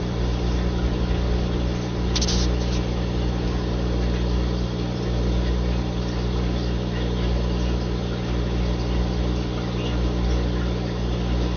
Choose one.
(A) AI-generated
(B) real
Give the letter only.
B